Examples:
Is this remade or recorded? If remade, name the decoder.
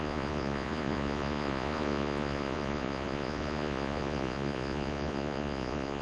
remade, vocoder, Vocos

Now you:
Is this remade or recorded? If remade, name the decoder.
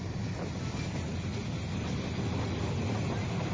recorded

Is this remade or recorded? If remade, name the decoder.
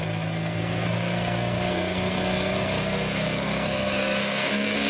remade, codec, SNAC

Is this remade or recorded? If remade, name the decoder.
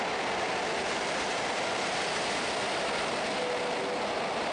recorded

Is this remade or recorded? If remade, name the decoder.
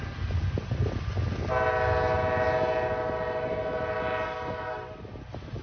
recorded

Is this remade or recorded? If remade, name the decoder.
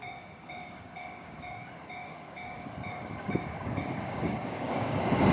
remade, codec, DAC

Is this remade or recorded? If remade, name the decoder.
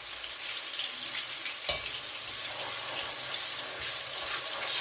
recorded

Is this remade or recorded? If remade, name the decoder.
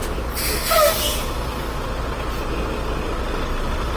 recorded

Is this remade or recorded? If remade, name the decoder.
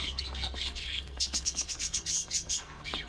remade, codec, SNAC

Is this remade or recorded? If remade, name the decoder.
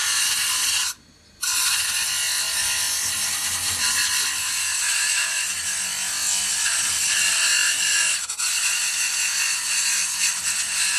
recorded